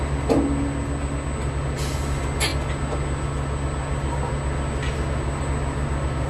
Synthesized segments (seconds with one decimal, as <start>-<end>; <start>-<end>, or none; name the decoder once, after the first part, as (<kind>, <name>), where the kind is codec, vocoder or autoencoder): none